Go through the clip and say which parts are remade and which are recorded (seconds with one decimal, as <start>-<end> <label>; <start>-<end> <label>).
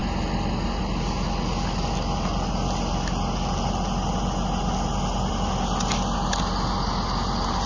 0.0-7.7 recorded